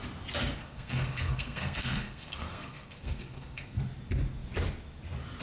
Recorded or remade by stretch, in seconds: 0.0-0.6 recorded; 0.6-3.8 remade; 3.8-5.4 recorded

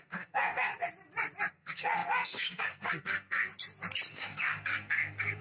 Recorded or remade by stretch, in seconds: 0.0-0.7 remade; 0.7-1.5 recorded; 1.5-3.5 remade; 3.5-4.1 recorded; 4.1-5.4 remade

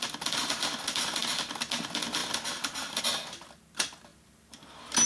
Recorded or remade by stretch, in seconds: 0.0-5.1 recorded